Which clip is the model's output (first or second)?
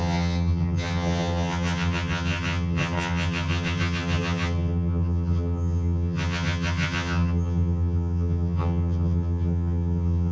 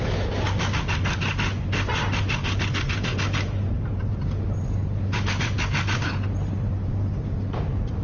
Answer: first